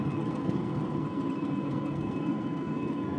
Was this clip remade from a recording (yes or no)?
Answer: yes